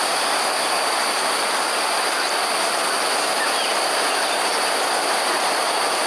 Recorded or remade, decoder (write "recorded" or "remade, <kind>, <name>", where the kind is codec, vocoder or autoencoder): recorded